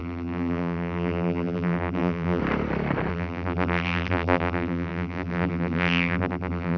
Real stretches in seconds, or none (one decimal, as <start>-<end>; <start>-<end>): 2.4-3.1